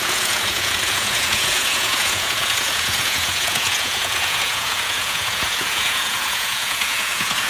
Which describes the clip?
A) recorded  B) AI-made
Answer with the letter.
B